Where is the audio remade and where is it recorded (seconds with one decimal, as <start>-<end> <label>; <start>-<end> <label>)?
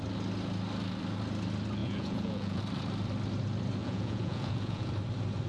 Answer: 0.0-1.8 recorded; 1.8-2.6 remade; 2.6-3.8 recorded; 3.8-4.9 remade; 4.9-5.5 recorded